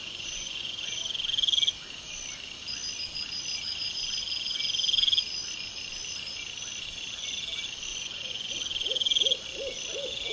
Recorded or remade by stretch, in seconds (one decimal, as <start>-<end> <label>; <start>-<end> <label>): 0.0-1.0 remade; 1.0-7.9 recorded; 7.9-8.5 remade; 8.5-10.3 recorded